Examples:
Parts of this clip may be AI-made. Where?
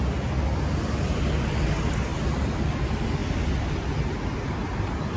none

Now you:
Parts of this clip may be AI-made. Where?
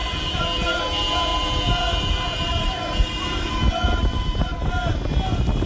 0.0-0.8 (vocoder, BigVGAN v2); 1.3-4.7